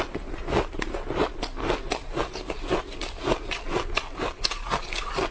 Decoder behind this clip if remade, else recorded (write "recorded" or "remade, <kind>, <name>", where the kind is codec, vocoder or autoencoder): recorded